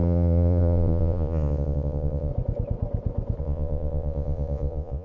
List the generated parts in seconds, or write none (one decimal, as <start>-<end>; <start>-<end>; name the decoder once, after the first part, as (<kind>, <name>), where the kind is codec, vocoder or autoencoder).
0.0-2.3 (vocoder, Vocos); 3.4-5.0